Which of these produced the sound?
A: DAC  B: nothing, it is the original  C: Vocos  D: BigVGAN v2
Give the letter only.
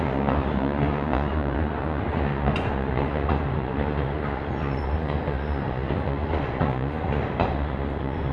C